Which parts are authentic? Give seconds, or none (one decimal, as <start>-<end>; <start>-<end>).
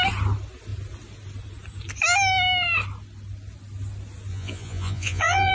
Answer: 0.0-4.3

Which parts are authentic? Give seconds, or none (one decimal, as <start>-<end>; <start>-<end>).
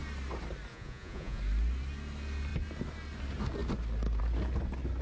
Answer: 0.0-0.7; 1.4-5.0